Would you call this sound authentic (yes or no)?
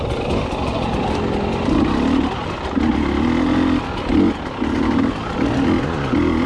yes